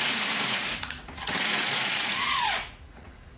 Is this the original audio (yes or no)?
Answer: no